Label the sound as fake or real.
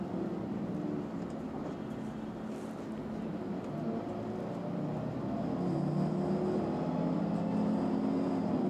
real